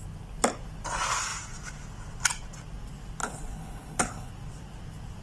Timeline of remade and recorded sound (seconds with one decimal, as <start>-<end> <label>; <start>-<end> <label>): 0.0-3.2 recorded; 3.2-4.3 remade; 4.3-5.2 recorded